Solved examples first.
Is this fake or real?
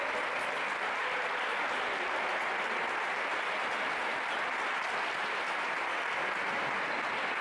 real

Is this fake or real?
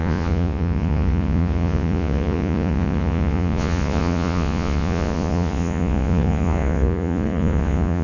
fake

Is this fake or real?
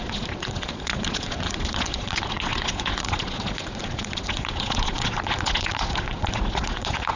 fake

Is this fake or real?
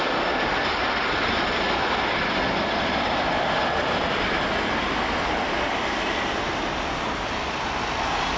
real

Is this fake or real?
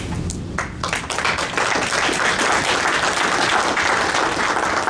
real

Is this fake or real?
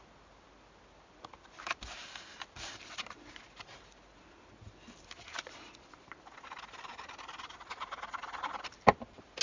real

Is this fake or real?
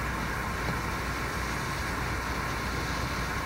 real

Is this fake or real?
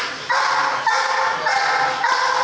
real